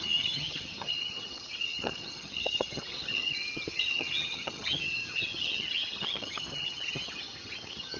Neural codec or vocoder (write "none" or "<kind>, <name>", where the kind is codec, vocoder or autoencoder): vocoder, HiFi-GAN